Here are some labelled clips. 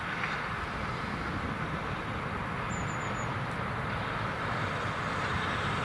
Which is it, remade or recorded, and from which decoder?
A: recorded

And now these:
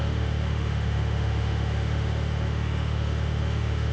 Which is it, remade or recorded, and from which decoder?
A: remade, autoencoder, DAC-VAE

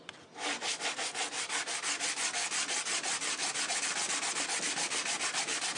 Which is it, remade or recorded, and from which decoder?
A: recorded